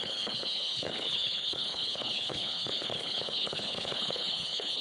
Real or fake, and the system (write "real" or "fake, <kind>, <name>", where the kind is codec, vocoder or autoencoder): fake, codec, HILCodec